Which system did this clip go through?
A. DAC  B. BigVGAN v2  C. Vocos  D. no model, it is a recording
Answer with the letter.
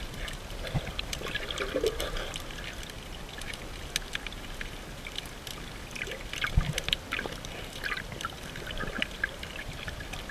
D